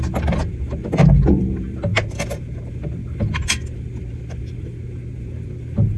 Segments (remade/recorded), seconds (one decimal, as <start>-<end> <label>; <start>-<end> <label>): 0.0-6.0 recorded